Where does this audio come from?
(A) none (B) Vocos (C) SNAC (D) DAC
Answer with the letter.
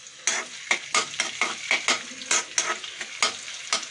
A